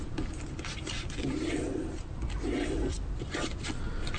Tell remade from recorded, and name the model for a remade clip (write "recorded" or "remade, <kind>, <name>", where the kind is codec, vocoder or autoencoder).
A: recorded